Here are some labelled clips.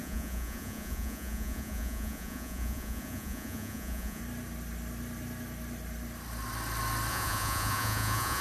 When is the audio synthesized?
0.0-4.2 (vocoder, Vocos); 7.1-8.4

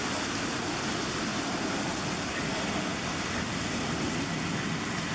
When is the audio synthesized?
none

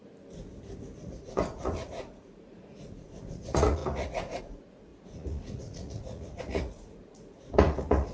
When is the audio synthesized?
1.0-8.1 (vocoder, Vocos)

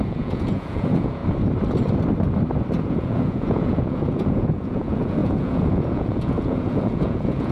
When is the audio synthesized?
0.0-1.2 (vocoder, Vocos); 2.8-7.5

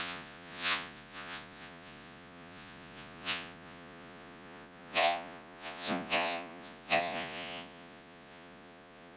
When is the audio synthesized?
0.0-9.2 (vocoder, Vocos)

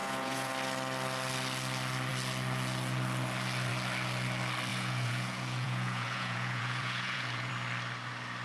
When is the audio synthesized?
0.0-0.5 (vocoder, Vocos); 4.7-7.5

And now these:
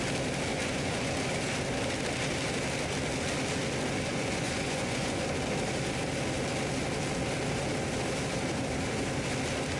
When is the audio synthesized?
0.5-1.1 (vocoder, Vocos); 4.1-5.2

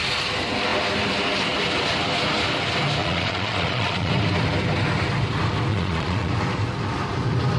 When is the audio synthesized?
3.0-4.1 (vocoder, Vocos); 5.7-6.3